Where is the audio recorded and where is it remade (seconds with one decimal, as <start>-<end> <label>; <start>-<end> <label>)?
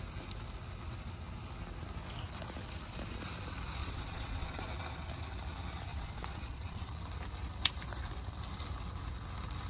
0.0-3.8 recorded; 3.8-4.7 remade; 4.7-5.9 recorded; 5.9-6.9 remade; 6.9-9.7 recorded